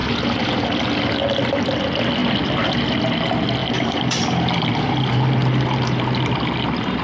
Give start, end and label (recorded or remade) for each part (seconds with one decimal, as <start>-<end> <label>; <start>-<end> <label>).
0.0-0.9 remade; 0.9-3.6 recorded; 3.6-6.0 remade; 6.0-7.0 recorded